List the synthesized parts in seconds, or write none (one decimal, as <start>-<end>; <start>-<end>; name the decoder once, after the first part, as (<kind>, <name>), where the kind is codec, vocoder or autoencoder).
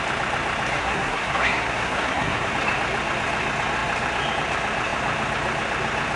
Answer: 0.8-2.5 (codec, SNAC)